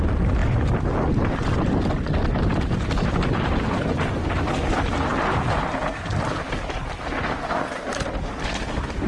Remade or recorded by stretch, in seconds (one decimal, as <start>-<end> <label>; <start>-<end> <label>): 0.0-9.1 recorded